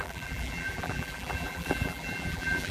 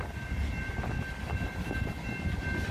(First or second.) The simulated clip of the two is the first